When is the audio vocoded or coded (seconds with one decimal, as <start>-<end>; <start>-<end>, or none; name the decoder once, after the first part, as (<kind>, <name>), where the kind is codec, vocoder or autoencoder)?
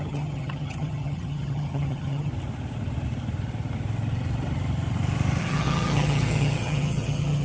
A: 0.0-2.3 (vocoder, HiFi-GAN); 5.4-7.4